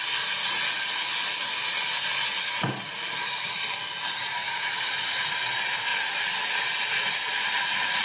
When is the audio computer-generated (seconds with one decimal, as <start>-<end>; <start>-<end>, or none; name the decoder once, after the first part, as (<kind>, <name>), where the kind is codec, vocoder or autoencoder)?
4.4-5.3 (vocoder, Vocos)